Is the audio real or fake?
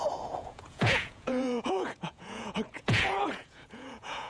fake